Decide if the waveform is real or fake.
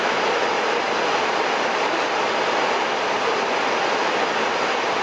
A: real